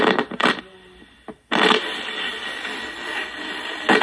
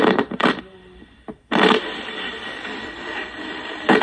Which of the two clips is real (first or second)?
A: first